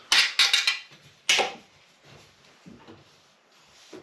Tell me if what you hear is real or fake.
real